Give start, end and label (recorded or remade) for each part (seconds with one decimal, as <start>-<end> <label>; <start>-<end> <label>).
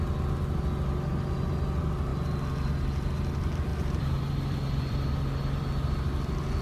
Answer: 0.0-3.7 recorded; 3.7-5.1 remade; 5.1-6.6 recorded